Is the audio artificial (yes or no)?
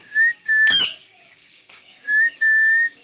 yes